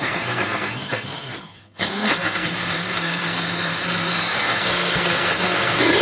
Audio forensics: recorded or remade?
remade